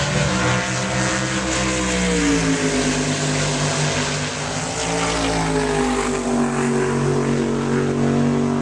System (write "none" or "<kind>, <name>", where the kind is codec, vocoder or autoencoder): none